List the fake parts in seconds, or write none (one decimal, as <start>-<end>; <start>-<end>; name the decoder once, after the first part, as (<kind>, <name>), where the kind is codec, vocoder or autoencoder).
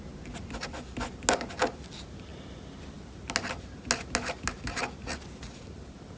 none